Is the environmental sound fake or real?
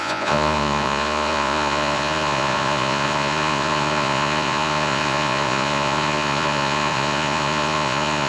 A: fake